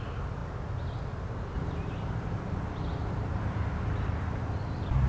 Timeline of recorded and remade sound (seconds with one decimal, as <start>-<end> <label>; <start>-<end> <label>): 0.0-5.1 recorded